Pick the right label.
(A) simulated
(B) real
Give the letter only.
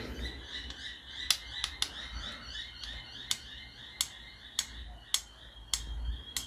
B